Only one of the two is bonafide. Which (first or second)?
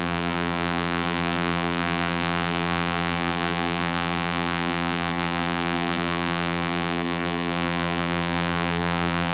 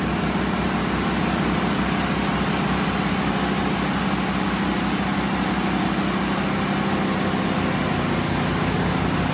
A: second